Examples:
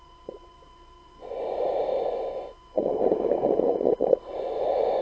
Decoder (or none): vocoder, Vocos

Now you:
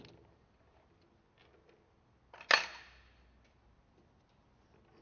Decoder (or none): none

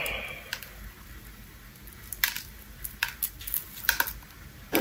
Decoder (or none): none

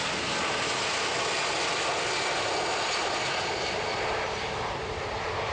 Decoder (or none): none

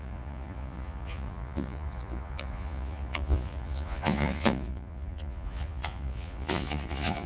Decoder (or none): vocoder, Vocos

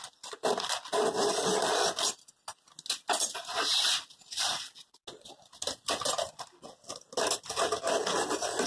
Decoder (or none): none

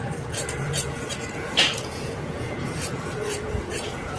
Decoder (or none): vocoder, Vocos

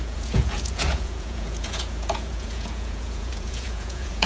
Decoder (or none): vocoder, Vocos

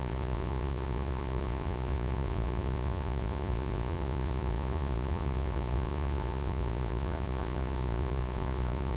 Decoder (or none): vocoder, Vocos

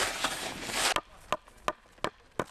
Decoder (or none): none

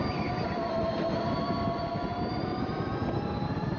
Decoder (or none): none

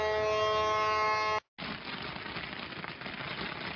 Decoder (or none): none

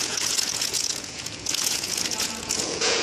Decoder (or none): vocoder, Vocos